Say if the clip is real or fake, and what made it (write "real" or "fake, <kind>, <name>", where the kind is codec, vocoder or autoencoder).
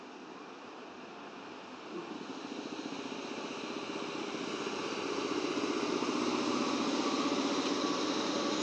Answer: real